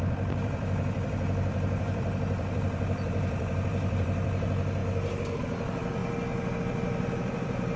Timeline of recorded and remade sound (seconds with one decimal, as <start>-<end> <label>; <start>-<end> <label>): 0.0-4.8 remade; 4.8-5.4 recorded; 5.4-6.0 remade; 6.0-6.6 recorded; 6.6-7.8 remade